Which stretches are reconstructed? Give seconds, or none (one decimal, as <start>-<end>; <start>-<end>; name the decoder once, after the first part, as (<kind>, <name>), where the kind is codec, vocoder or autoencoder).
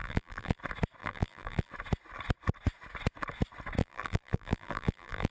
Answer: 0.0-0.6 (vocoder, BigVGAN v2); 1.0-1.7; 3.8-5.3